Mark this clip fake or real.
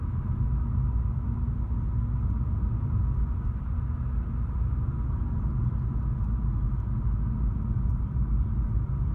real